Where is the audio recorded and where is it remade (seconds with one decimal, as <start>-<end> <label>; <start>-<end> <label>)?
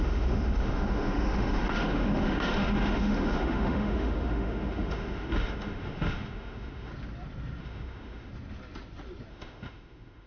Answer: 0.0-6.9 remade; 6.9-7.6 recorded; 7.6-8.3 remade; 8.3-9.3 recorded; 9.3-10.3 remade